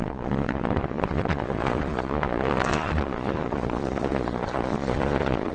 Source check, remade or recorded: remade